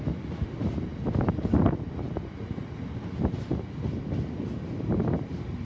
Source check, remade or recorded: recorded